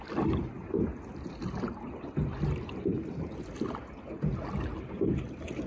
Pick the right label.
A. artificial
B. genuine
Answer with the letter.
B